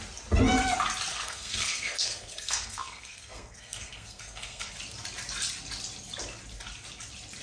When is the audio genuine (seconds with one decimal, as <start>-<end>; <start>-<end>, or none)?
0.0-1.1; 4.7-7.4